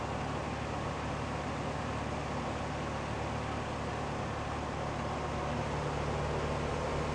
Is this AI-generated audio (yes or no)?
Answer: no